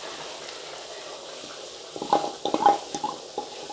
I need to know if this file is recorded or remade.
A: recorded